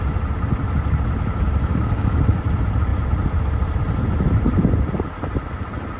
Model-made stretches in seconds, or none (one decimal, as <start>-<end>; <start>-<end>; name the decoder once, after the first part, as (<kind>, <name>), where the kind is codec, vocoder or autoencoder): 1.6-2.2 (codec, DAC)